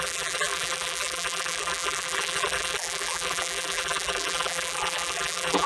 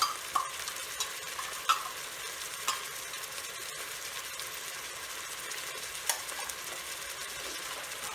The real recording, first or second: second